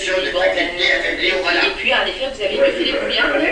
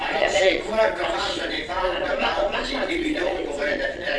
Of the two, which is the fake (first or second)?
second